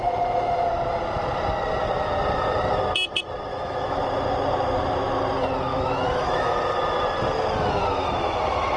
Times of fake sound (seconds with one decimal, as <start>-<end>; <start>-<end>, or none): 3.5-4.0; 5.7-6.5